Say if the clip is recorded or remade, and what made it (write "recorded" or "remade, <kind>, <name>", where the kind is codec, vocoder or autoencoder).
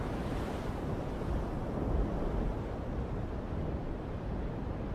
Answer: recorded